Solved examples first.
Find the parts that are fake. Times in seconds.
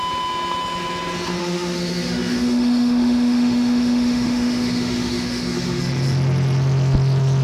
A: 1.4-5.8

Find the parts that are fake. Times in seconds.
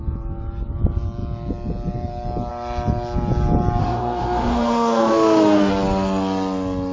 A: 3.8-5.7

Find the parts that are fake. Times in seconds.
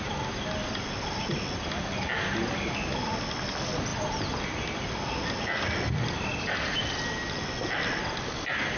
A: none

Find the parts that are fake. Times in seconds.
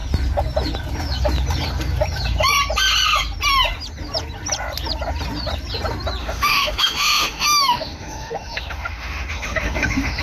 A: 6.2-10.2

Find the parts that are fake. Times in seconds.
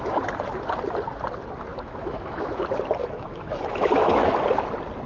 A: 1.7-2.6; 3.0-4.3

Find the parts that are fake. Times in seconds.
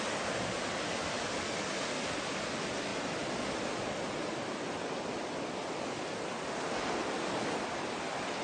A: none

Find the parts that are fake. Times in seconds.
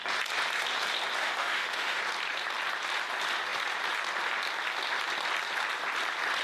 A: 1.2-2.0